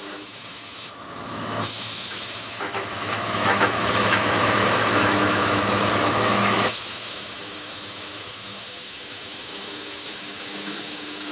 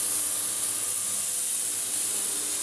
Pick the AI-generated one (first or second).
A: first